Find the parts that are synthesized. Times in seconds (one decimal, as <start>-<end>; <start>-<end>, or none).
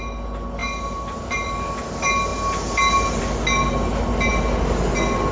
none